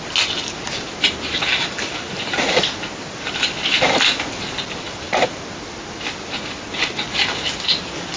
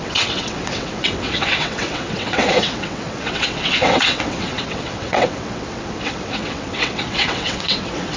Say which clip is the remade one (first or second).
second